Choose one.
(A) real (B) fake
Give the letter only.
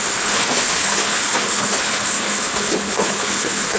B